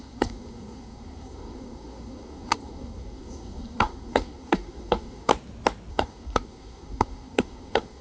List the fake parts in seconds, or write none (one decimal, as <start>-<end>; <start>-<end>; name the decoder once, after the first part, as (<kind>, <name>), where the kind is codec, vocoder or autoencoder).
0.0-5.3 (codec, SNAC); 5.9-8.0